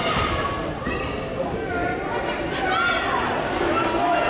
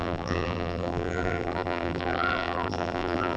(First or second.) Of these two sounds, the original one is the first